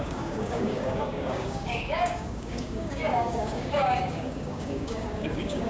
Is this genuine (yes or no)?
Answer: no